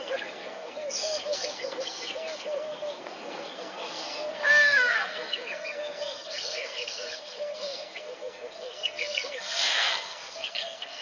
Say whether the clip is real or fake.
fake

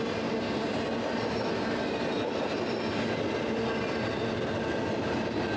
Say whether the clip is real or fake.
real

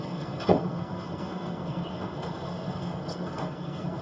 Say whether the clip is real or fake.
fake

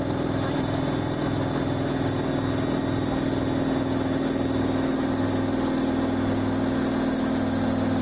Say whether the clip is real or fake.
real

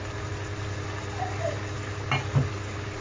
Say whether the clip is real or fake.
real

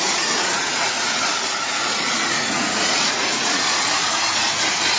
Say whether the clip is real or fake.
fake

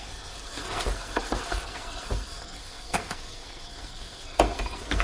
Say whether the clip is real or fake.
fake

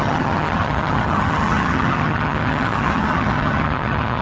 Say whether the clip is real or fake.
fake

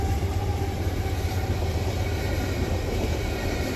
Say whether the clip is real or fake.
fake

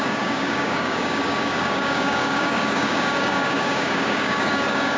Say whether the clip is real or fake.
fake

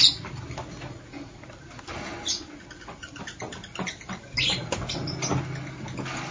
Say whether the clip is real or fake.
real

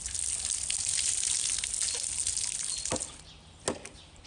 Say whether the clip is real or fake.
real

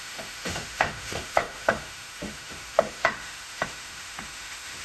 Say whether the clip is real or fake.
fake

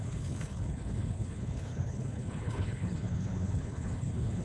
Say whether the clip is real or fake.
fake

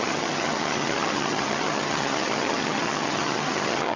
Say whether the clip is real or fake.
fake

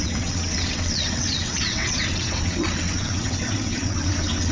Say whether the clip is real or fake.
fake